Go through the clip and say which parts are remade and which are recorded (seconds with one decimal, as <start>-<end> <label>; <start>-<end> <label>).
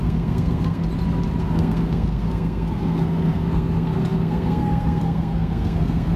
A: 0.0-0.8 remade; 0.8-1.4 recorded; 1.4-6.2 remade